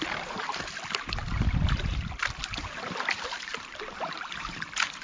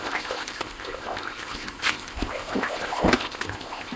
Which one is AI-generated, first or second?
second